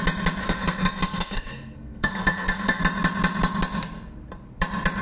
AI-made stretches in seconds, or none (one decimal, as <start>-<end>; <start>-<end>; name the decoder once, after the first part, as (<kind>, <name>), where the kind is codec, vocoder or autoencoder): 0.4-2.8 (codec, SNAC)